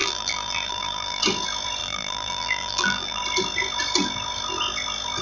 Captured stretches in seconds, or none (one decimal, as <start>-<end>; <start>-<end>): 1.2-1.8; 3.2-5.2